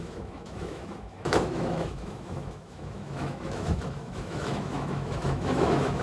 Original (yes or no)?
no